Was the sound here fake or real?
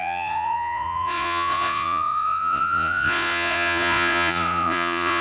fake